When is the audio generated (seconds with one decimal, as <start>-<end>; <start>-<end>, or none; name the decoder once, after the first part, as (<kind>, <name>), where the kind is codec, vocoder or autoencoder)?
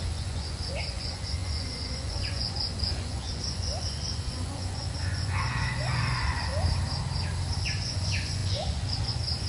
0.0-6.5 (vocoder, Vocos); 7.6-9.5